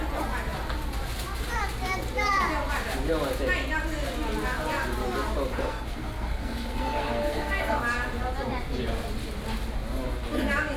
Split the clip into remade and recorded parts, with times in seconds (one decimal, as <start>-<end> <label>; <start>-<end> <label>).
0.0-5.5 recorded; 5.5-7.8 remade; 7.8-10.8 recorded